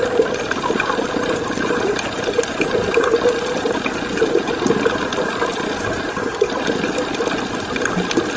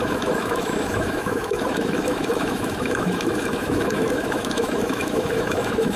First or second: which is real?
first